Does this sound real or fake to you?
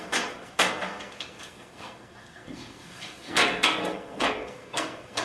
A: fake